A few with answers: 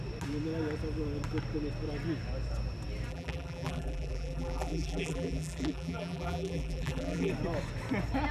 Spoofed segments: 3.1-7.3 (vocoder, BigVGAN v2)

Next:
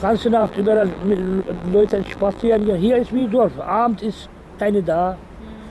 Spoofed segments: 0.4-2.7 (vocoder, BigVGAN v2)

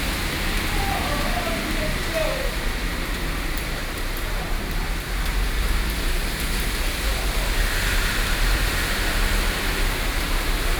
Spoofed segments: 3.8-5.4 (vocoder, BigVGAN v2); 7.9-8.7

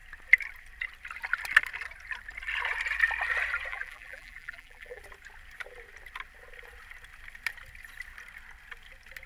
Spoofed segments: 3.7-5.0 (vocoder, BigVGAN v2)

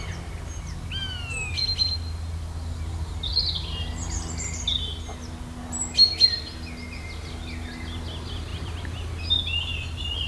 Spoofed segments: none

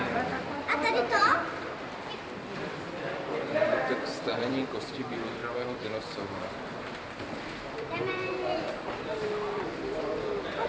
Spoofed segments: 0.0-5.4 (vocoder, BigVGAN v2); 7.4-10.7

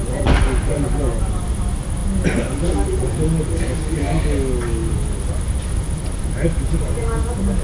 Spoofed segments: 0.0-1.0 (vocoder, BigVGAN v2); 4.8-6.2